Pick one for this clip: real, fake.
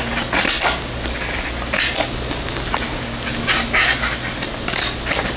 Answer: real